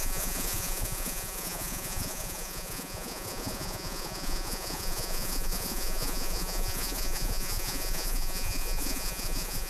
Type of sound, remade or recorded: remade